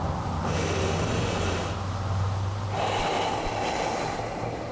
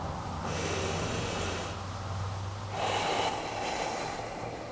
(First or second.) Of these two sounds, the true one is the second